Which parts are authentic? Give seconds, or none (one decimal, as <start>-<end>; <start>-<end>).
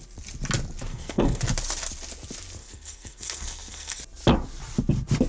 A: 0.0-0.9; 1.4-2.6; 4.0-5.3